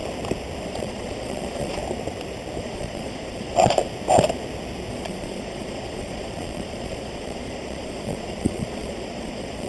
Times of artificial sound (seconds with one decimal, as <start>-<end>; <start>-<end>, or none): 0.7-1.8; 2.6-3.8; 4.9-9.7